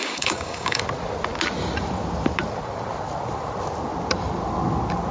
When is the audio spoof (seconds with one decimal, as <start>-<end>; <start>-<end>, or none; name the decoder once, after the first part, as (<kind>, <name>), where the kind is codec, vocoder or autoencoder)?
0.0-0.8 (codec, DAC)